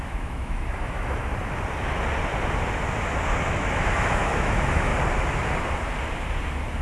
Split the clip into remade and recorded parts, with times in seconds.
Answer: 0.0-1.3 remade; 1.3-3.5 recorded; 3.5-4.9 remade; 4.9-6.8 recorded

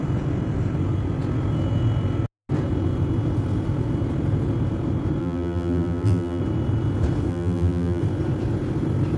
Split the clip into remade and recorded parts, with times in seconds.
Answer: 0.0-5.2 recorded; 5.2-6.4 remade; 6.4-7.3 recorded; 7.3-8.0 remade; 8.0-9.2 recorded

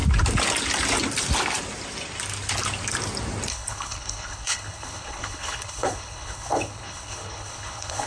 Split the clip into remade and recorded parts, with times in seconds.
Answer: 0.0-3.5 recorded; 3.5-8.1 remade

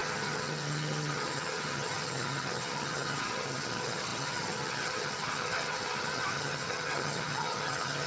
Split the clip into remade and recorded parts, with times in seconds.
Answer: 0.0-8.1 remade

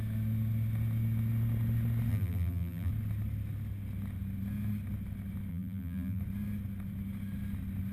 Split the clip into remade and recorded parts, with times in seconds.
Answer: 0.0-2.1 recorded; 2.1-2.9 remade; 2.9-5.5 recorded; 5.5-6.2 remade; 6.2-7.9 recorded